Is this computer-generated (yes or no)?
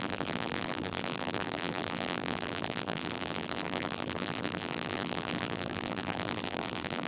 yes